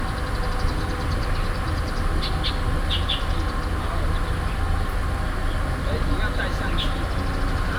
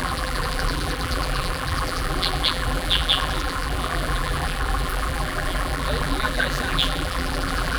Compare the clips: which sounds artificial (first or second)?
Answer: second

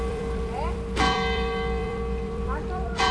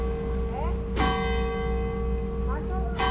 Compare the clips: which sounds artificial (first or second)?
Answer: first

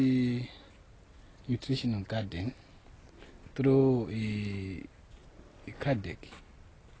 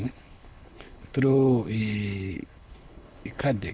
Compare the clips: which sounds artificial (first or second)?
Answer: second